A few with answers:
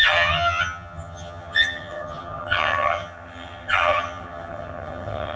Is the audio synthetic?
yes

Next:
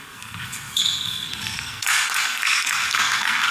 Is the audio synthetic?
yes